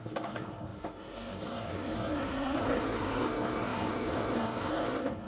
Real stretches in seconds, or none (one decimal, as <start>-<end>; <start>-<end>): none